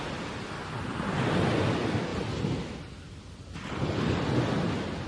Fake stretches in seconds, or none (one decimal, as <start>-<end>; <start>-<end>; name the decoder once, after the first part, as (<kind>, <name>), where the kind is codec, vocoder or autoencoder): none